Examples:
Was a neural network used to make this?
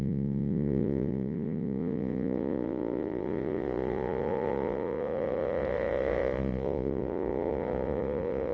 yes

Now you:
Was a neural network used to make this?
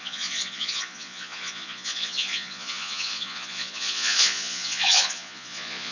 yes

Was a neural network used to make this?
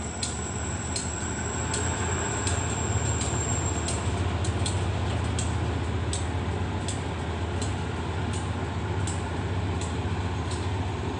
no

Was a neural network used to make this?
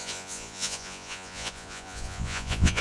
yes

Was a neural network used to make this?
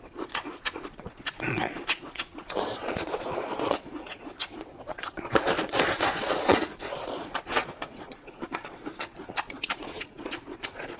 yes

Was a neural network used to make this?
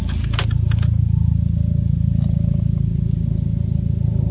no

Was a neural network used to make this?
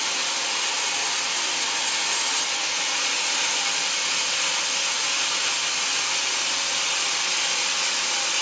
no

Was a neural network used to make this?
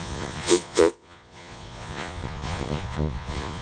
yes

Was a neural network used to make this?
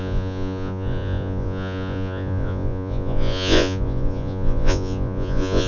yes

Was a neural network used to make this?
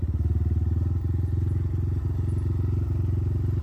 no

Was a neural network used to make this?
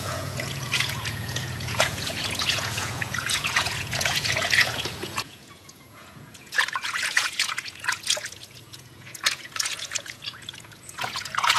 yes